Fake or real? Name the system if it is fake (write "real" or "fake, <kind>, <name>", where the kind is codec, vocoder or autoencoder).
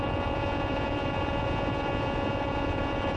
fake, vocoder, Vocos